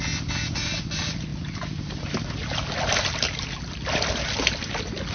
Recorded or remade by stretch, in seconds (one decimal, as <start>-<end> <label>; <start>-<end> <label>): 0.0-5.1 recorded